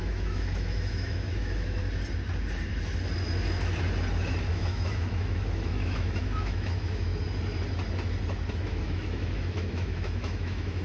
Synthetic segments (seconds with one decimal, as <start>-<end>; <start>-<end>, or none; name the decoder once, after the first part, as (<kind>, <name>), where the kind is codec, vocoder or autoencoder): 0.0-1.8 (autoencoder, DAC-VAE); 4.5-7.1; 8.5-10.8